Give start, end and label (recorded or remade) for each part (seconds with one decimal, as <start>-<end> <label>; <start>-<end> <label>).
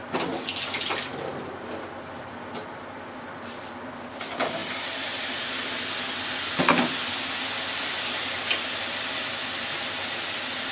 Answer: 0.0-10.7 recorded